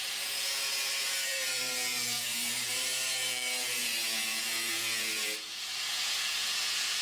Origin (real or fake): fake